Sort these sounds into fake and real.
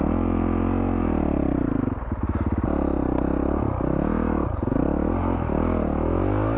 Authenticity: real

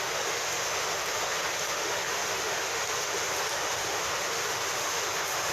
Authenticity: fake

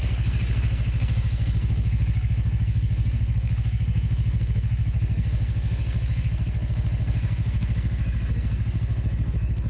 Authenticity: fake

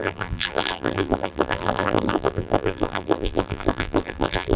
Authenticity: fake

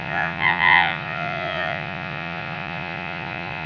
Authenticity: fake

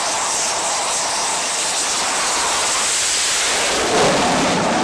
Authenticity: fake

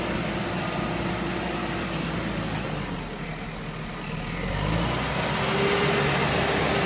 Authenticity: real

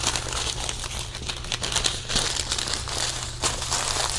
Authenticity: real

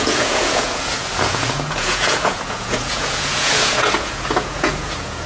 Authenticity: fake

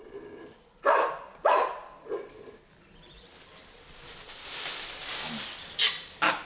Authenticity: real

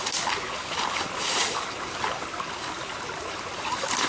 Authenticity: real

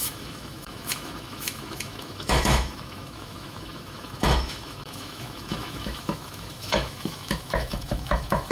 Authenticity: fake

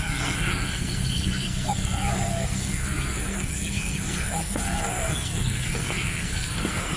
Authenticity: fake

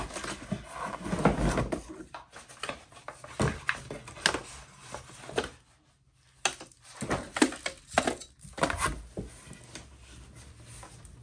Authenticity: real